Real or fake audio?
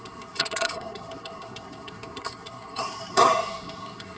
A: fake